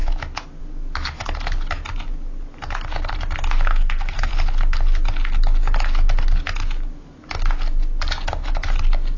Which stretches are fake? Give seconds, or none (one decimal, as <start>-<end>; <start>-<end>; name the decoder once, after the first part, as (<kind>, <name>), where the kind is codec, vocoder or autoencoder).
3.7-4.3 (codec, SNAC)